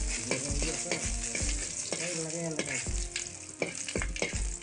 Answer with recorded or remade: recorded